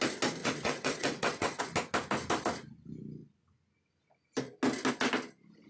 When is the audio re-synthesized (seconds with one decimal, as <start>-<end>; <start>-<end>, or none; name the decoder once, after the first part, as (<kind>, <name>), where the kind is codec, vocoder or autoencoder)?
0.4-1.6 (vocoder, WaveNeXt)